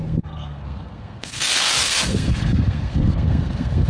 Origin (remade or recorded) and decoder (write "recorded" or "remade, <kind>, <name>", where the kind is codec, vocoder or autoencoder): remade, codec, SNAC